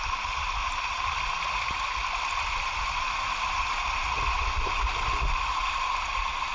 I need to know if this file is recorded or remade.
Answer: recorded